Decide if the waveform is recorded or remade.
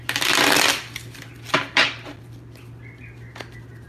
recorded